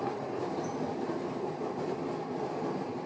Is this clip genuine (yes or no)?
yes